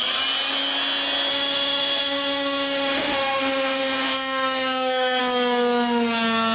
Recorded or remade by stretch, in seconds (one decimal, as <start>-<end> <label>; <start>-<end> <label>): 0.0-1.3 recorded; 1.3-5.2 remade; 5.2-6.5 recorded